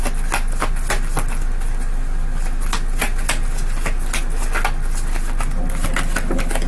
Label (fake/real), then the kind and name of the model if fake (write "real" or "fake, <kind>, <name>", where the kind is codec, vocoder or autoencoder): real